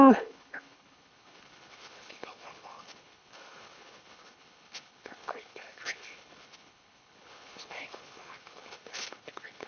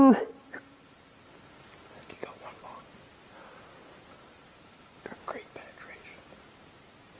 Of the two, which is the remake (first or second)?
first